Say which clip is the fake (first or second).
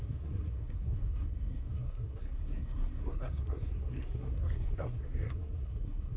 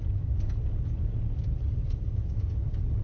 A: first